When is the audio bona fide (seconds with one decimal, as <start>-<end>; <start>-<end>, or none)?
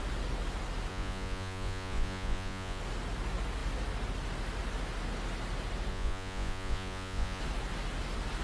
0.0-0.9; 2.8-5.9; 7.4-8.4